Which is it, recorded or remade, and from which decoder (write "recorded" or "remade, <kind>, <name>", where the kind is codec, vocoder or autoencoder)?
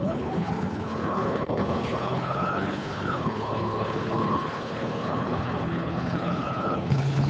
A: remade, codec, HILCodec